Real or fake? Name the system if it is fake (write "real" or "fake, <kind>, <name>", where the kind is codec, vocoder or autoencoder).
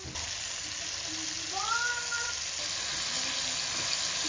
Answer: real